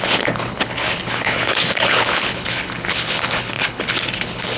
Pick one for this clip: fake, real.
fake